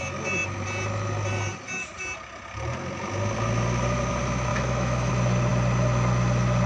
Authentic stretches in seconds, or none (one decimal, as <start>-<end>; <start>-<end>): 0.0-4.5; 5.1-6.7